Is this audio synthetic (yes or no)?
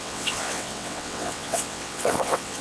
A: yes